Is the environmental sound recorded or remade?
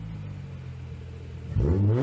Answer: recorded